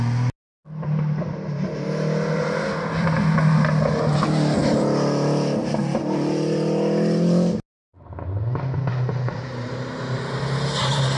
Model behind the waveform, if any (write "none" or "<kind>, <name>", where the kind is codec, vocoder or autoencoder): none